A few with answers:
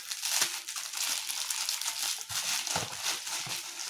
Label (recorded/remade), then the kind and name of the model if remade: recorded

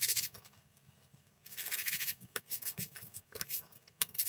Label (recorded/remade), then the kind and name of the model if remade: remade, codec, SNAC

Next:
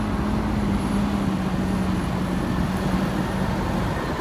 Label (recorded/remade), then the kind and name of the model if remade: recorded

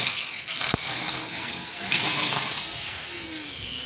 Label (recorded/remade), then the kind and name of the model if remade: remade, codec, SNAC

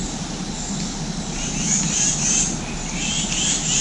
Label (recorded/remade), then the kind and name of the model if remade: recorded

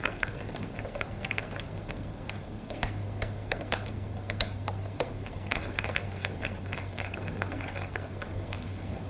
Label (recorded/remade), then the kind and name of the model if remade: remade, codec, SNAC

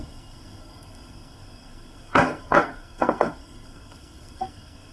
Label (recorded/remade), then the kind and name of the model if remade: remade, codec, SNAC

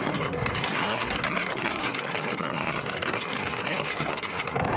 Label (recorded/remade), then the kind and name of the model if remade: remade, codec, SNAC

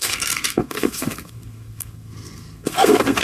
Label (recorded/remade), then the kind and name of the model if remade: remade, codec, SNAC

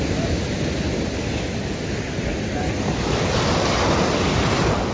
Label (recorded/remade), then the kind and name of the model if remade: recorded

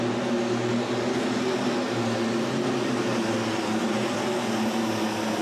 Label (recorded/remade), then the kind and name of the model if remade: recorded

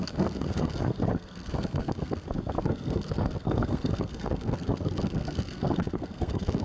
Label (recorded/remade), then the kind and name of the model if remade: remade, codec, SNAC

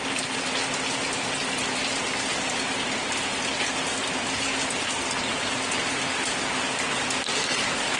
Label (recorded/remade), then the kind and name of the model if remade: recorded